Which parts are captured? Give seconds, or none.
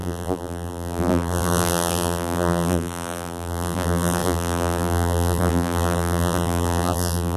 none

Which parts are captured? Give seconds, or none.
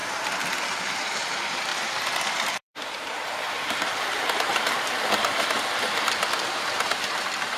0.0-0.8; 1.7-2.3; 4.5-7.1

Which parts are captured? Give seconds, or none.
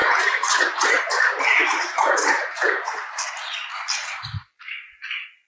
3.2-5.5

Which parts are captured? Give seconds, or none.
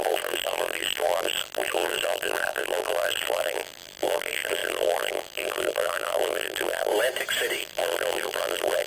6.9-7.6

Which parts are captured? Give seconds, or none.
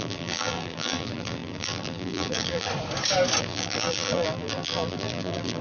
2.7-3.4